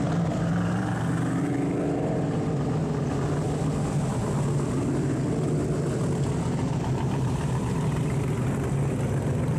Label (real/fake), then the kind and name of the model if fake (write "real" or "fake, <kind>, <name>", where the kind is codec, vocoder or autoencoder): real